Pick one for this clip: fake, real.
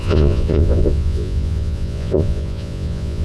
fake